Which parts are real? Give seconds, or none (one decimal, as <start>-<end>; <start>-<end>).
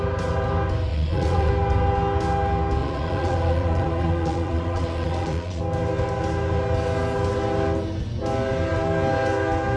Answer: 0.0-0.9; 1.5-2.8; 5.6-9.8